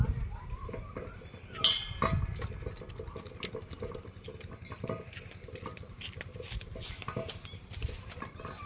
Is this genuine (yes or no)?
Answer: yes